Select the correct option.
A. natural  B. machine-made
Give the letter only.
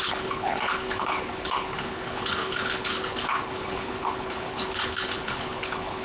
B